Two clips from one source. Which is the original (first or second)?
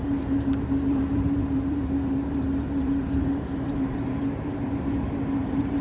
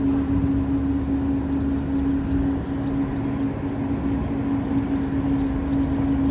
second